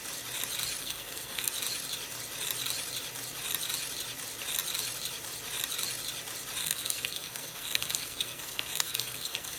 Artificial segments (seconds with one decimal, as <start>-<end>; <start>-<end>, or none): 0.8-1.5; 6.6-9.6